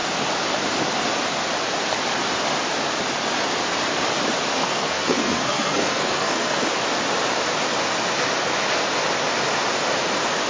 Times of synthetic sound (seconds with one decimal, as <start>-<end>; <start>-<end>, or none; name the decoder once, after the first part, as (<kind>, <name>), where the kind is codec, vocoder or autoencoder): 4.6-6.6 (codec, SNAC)